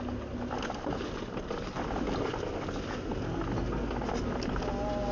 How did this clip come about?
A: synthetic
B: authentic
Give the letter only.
B